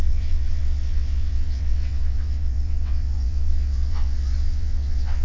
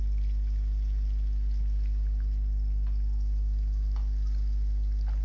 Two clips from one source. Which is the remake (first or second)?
first